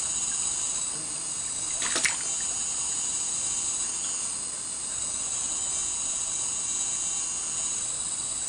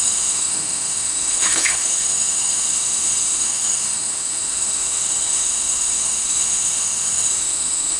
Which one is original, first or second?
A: first